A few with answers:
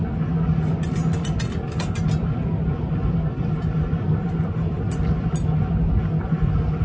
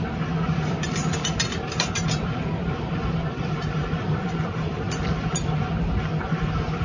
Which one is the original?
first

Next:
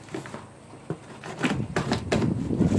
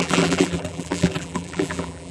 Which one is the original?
first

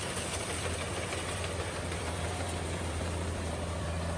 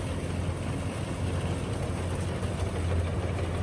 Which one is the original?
second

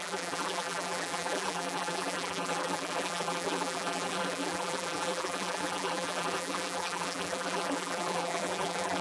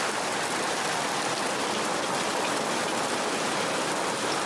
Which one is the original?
second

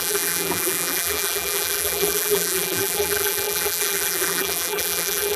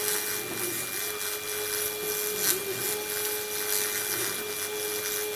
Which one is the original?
second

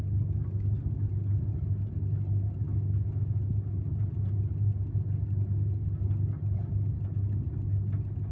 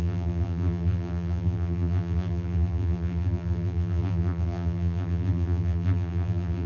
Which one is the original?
first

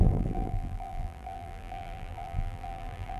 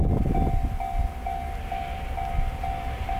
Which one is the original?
second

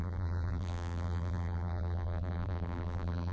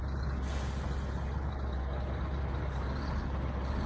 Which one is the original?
second